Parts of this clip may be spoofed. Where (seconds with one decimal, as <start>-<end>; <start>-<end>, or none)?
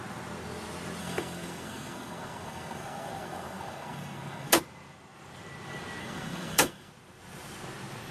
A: 1.0-4.5; 6.0-6.9